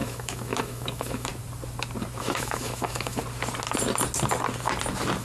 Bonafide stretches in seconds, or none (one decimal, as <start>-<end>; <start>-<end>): 1.3-2.2; 3.2-5.2